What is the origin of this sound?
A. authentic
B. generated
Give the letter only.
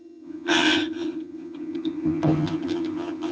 B